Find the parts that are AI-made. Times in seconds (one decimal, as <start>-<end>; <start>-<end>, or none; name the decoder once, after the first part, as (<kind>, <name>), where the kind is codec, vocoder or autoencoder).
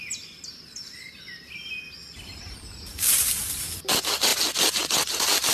2.0-3.9 (vocoder, BigVGAN v2); 4.3-5.5